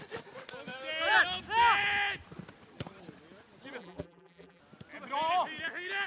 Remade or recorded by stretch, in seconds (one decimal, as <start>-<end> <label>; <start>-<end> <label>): 0.0-3.8 recorded; 3.8-4.6 remade; 4.6-6.1 recorded